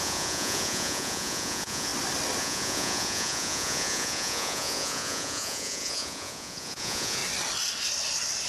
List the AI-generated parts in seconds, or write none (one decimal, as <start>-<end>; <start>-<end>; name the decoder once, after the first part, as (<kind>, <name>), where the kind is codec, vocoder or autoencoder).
0.0-1.9 (vocoder, Vocos); 2.4-7.2